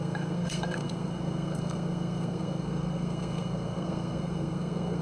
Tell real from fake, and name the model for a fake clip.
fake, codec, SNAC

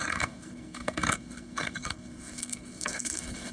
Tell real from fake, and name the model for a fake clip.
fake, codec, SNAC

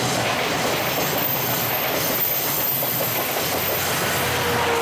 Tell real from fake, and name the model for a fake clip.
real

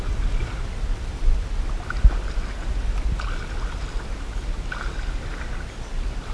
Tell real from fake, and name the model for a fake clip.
real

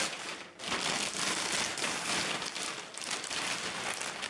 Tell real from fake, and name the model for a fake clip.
real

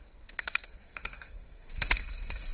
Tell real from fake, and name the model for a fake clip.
fake, codec, SNAC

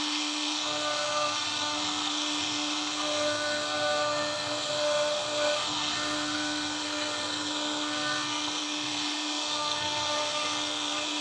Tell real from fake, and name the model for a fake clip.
fake, codec, SNAC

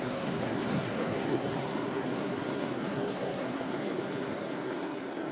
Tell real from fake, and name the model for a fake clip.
fake, codec, SNAC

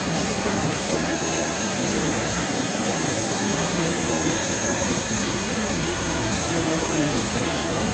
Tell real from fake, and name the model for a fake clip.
fake, codec, SNAC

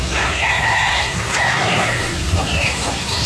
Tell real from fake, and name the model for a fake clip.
fake, codec, SNAC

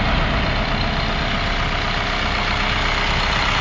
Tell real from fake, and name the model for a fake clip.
real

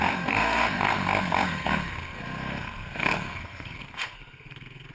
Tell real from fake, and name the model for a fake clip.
fake, codec, SNAC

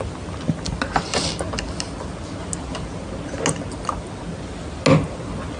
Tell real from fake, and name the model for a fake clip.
real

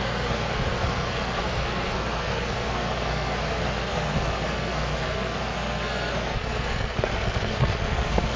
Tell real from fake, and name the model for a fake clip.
fake, codec, SNAC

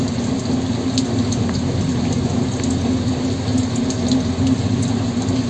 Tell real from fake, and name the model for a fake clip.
real